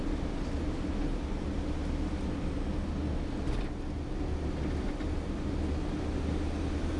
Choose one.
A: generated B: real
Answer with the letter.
B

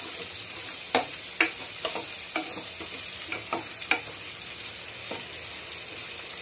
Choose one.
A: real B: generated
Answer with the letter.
A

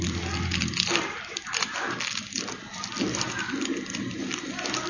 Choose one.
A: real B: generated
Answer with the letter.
A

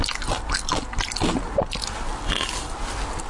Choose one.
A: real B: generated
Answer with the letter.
A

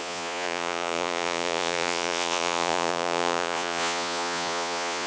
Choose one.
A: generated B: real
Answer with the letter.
A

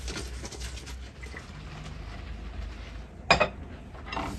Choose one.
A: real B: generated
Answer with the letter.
A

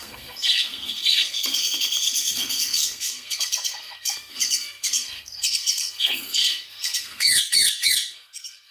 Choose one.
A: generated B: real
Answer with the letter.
A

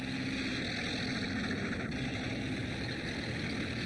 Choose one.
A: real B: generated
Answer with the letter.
A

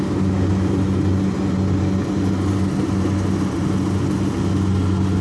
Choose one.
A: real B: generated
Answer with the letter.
A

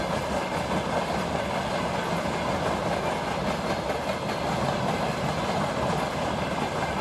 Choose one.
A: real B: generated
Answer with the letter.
A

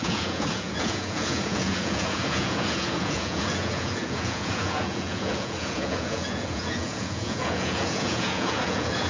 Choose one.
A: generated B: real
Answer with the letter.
A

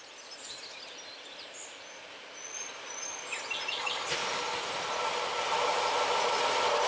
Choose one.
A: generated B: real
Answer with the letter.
B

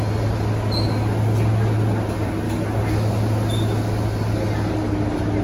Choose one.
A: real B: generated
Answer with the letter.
A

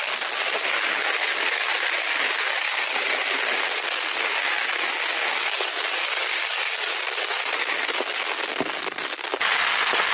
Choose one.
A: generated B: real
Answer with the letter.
B